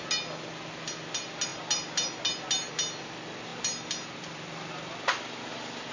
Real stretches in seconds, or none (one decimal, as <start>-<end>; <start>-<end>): 0.0-5.9